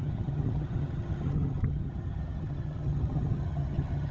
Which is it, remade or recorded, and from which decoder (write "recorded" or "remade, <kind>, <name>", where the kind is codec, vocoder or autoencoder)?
remade, vocoder, HiFi-GAN